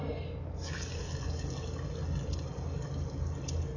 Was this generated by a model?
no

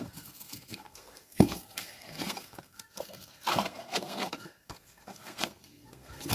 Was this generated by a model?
yes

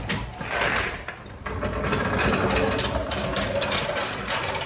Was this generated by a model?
no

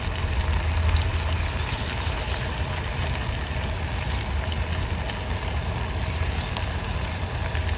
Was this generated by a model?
no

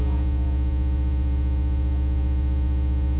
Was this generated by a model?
yes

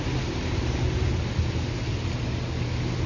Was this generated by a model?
no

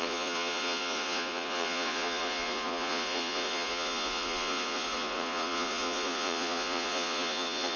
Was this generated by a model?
yes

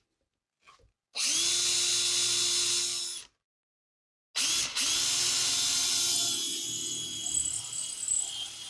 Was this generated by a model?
no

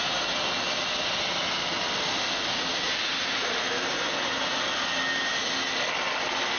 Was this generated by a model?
no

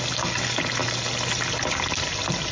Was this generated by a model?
no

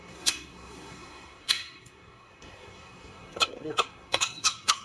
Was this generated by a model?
yes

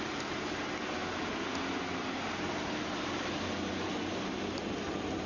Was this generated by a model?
no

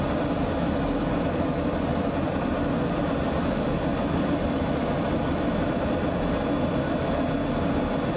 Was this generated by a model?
no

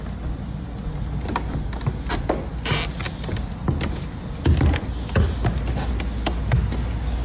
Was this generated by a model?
no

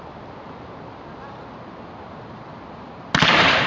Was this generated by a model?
no